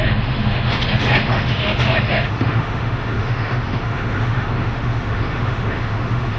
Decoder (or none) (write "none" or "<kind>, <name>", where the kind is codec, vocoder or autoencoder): autoencoder, DAC-VAE